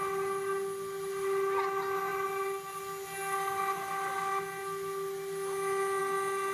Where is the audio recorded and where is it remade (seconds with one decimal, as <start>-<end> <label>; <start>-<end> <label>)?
0.0-6.5 recorded

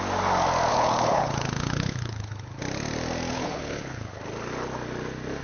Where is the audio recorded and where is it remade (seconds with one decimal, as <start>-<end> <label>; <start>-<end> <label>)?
0.0-0.7 recorded; 0.7-2.6 remade; 2.6-3.3 recorded; 3.3-4.2 remade; 4.2-5.4 recorded

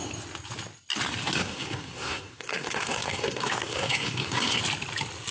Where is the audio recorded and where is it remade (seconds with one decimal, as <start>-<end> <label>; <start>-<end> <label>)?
0.0-1.4 recorded; 1.4-4.6 remade; 4.6-5.3 recorded

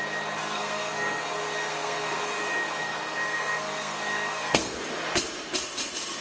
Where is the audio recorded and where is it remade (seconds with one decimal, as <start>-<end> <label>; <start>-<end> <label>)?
0.0-0.4 recorded; 0.4-1.2 remade; 1.2-1.7 recorded; 1.7-2.2 remade; 2.2-2.8 recorded; 2.8-4.8 remade; 4.8-6.2 recorded

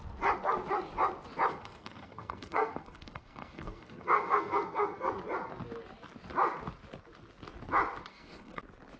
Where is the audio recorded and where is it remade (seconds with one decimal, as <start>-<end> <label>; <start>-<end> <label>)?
0.0-1.5 recorded; 1.5-5.1 remade; 5.1-8.1 recorded; 8.1-8.6 remade; 8.6-9.0 recorded

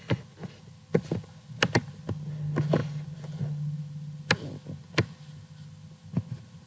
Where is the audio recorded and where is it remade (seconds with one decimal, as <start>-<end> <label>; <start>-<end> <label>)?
0.0-6.7 recorded